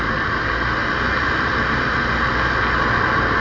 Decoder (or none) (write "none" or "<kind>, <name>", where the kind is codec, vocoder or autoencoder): none